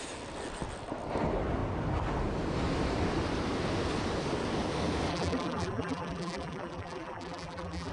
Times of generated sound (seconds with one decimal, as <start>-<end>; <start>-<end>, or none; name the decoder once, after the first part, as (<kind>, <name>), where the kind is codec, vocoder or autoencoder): 5.1-7.9 (vocoder, BigVGAN v2)

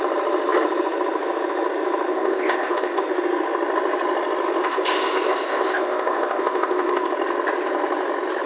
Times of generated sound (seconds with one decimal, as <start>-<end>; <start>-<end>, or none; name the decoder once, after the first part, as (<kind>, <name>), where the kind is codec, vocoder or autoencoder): 2.1-3.0 (codec, ZipCodec); 4.6-7.1